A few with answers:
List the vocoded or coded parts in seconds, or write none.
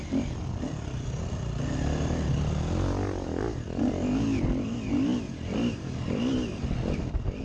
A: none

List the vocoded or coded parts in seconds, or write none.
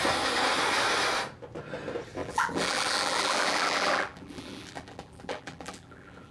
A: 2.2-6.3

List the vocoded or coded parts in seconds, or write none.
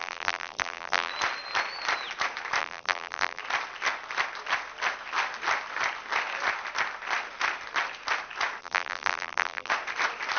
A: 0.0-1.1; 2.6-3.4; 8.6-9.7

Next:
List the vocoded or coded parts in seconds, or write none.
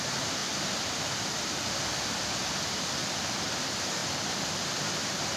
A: 0.0-0.4; 1.3-4.0; 4.5-5.4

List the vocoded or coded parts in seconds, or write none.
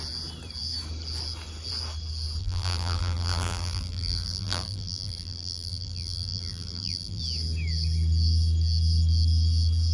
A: 2.4-7.2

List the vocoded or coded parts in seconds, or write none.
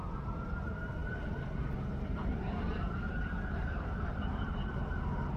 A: 0.0-5.4